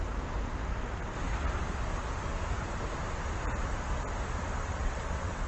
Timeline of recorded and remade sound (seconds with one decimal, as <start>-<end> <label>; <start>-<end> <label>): 0.0-4.6 recorded; 4.6-5.5 remade